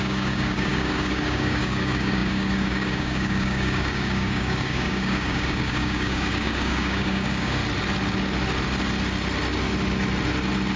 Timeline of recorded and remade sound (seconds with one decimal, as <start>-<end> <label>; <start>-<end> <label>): 0.0-7.6 remade; 7.6-10.8 recorded